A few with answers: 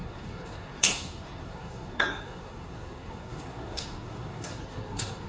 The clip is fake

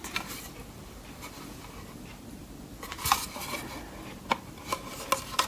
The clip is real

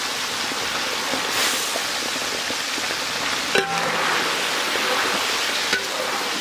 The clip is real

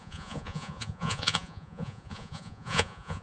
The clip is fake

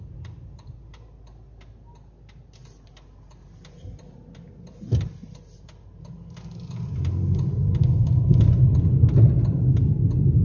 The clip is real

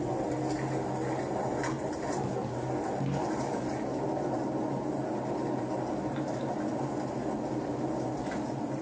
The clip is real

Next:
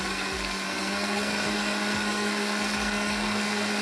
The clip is fake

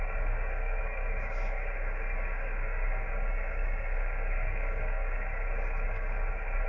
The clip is fake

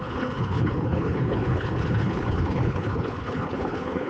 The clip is fake